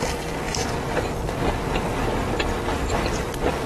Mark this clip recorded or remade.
recorded